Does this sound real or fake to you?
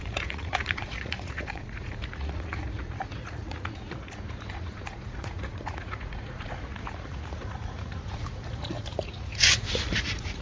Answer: fake